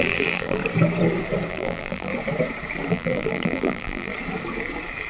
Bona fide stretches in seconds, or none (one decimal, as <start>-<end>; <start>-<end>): 0.6-1.5; 2.1-2.9; 4.1-5.1